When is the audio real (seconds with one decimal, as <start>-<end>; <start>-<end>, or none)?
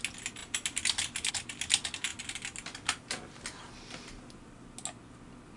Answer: 0.0-5.6